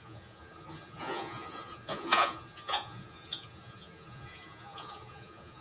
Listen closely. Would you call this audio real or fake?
fake